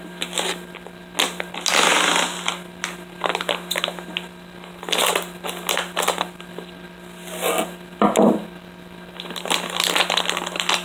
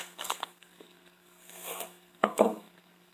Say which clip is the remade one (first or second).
second